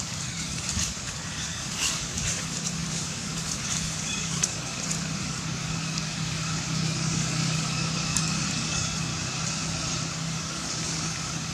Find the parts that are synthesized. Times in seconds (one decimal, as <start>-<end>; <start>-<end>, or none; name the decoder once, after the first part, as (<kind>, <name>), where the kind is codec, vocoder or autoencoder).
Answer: 0.0-9.1 (codec, DAC); 10.1-11.5